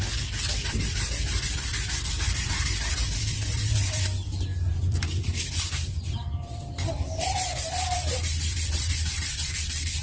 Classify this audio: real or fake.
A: fake